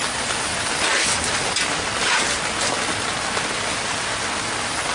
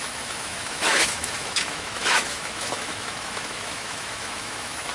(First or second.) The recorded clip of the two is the first